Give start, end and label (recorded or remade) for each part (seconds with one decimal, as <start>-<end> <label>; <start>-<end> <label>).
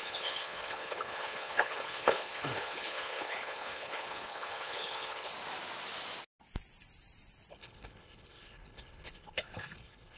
0.0-5.3 remade; 5.3-7.5 recorded; 7.5-10.2 remade